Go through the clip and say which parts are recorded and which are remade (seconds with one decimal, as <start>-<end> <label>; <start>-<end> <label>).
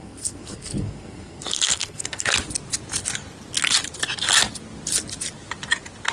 0.0-2.3 remade; 2.3-6.1 recorded